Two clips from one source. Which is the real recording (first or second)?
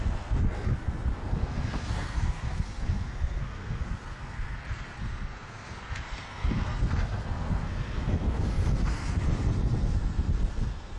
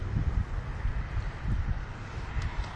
second